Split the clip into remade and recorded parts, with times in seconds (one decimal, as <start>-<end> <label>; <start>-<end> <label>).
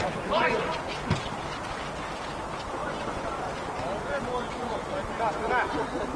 0.0-2.8 recorded; 2.8-3.3 remade; 3.3-6.2 recorded